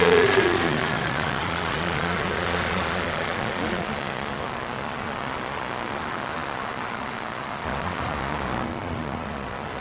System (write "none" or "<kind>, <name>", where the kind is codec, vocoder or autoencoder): vocoder, Vocos